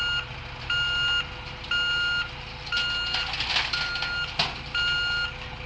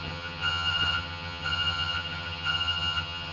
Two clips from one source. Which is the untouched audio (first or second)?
first